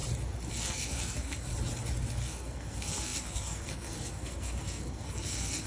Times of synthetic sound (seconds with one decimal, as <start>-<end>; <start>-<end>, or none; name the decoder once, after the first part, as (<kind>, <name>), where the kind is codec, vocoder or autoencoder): 0.5-1.5 (codec, SNAC); 2.1-5.7